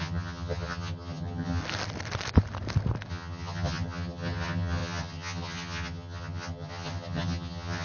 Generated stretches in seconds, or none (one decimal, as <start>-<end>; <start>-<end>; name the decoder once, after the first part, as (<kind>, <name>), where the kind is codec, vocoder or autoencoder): 0.0-1.6 (vocoder, HiFi-GAN); 3.1-7.8